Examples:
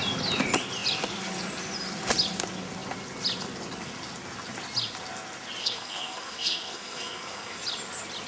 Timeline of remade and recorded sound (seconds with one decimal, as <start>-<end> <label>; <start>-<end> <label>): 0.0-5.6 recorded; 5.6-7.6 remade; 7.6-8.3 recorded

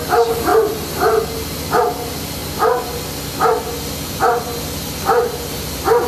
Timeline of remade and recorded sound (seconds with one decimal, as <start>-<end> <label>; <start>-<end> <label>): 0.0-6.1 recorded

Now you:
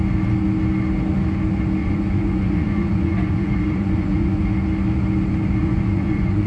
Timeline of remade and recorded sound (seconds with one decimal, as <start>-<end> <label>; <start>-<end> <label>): 0.0-1.8 recorded; 1.8-4.5 remade; 4.5-5.6 recorded; 5.6-6.5 remade

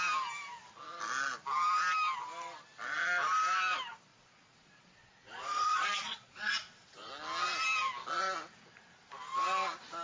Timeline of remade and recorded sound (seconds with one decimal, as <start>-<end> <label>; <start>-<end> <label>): 0.0-4.1 recorded; 4.1-7.1 remade; 7.1-10.0 recorded

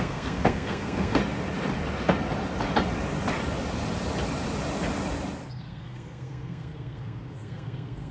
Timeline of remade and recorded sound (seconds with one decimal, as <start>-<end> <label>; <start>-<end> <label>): 0.0-1.2 remade; 1.2-5.5 recorded; 5.5-8.1 remade